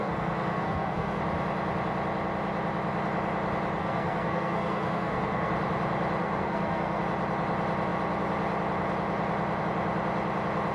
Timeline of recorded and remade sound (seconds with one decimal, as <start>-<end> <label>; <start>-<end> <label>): 0.0-1.2 remade; 1.2-3.8 recorded; 3.8-5.5 remade; 5.5-6.2 recorded; 6.2-7.0 remade; 7.0-10.7 recorded